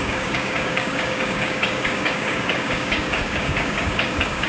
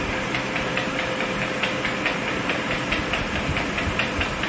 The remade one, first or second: first